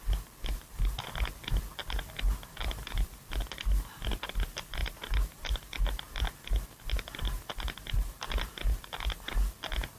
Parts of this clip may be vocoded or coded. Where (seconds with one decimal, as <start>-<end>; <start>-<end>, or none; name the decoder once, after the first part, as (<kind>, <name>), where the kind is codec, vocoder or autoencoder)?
none